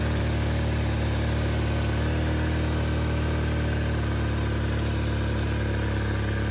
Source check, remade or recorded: recorded